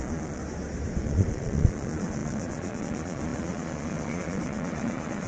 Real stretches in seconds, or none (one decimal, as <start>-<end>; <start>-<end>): 0.4-1.0